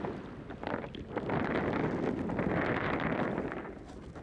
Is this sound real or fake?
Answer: real